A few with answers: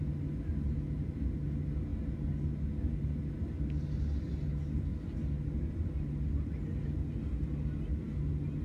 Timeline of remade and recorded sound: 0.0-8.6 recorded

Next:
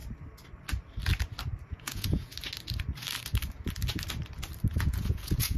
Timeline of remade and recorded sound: 0.0-1.7 recorded; 1.7-2.3 remade; 2.3-4.7 recorded; 4.7-5.6 remade

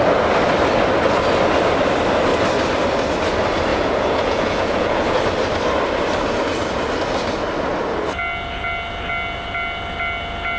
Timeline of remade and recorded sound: 0.0-3.7 recorded; 3.7-5.2 remade; 5.2-10.6 recorded